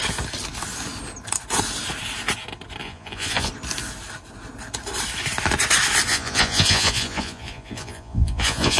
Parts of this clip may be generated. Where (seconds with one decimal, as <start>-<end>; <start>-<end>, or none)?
2.8-3.5; 6.1-8.8